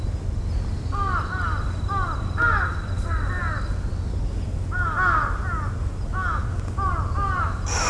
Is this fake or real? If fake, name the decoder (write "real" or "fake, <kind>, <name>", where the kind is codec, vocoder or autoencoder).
real